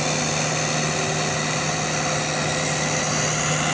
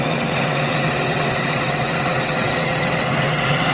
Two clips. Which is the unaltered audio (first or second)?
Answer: first